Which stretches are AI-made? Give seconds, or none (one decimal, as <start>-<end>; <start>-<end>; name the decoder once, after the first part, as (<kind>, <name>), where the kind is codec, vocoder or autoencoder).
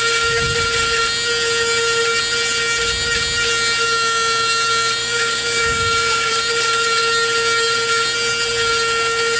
5.0-6.3 (codec, DAC)